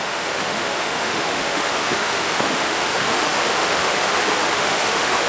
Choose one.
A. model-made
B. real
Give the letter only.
A